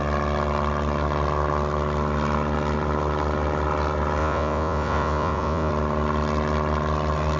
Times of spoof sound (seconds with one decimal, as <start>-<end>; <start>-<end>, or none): 4.2-5.7

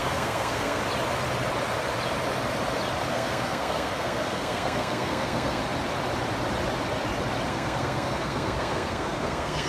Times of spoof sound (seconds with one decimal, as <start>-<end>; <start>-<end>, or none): 0.0-0.8; 3.1-5.6; 7.5-9.7

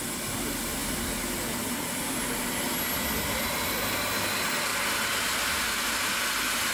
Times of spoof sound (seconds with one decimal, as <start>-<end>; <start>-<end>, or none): none

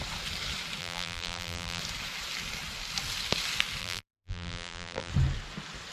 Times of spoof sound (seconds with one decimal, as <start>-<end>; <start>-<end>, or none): 0.8-1.8; 3.8-5.1

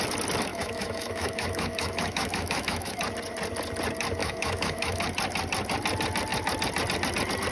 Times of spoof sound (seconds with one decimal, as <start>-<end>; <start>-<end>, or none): 0.5-3.0; 4.2-5.0

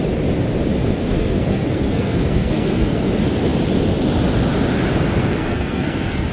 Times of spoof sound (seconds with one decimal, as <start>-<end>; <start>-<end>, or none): 0.8-3.1; 5.2-6.3